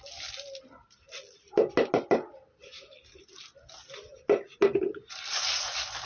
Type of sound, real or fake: real